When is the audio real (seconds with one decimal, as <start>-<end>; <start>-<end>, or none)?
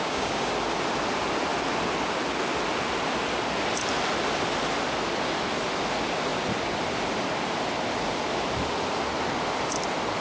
0.5-10.2